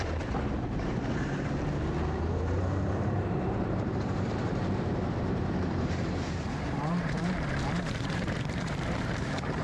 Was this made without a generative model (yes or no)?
no